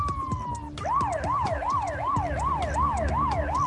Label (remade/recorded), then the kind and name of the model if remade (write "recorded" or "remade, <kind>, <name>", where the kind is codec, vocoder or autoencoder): recorded